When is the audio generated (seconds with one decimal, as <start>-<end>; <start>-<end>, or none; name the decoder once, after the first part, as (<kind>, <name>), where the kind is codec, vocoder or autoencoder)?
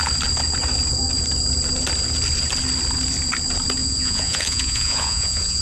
3.8-5.6 (vocoder, Vocos)